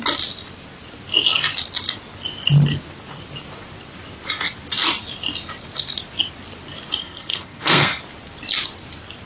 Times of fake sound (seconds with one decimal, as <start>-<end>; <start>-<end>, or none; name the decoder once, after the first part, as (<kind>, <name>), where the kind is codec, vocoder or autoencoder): 7.0-8.0 (codec, SNAC)